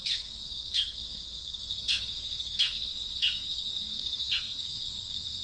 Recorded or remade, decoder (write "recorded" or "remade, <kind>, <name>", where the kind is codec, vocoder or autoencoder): remade, codec, SNAC